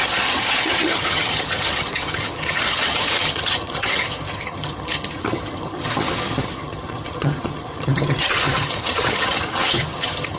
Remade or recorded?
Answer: remade